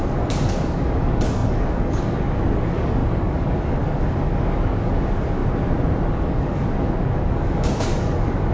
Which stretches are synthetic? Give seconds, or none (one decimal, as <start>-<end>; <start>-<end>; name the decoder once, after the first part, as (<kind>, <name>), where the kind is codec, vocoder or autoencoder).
0.0-5.4 (codec, DAC); 6.1-8.5